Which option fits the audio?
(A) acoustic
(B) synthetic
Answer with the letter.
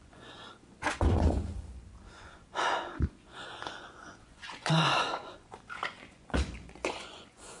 B